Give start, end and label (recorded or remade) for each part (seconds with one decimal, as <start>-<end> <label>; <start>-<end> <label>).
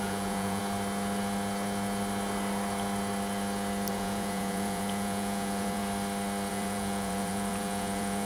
0.0-0.6 remade; 0.6-3.9 recorded; 3.9-5.8 remade; 5.8-6.5 recorded; 6.5-8.3 remade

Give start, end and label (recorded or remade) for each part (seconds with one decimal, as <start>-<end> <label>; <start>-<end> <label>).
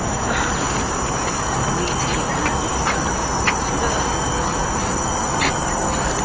0.0-6.2 recorded